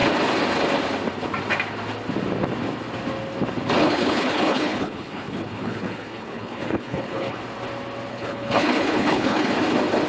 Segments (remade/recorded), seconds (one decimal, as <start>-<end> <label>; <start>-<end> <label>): 0.0-3.8 recorded; 3.8-7.4 remade; 7.4-8.1 recorded; 8.1-9.5 remade; 9.5-10.1 recorded